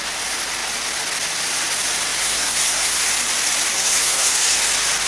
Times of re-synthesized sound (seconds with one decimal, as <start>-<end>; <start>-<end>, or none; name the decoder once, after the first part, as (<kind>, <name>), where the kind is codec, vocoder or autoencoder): 2.2-3.1 (codec, SNAC); 3.7-4.6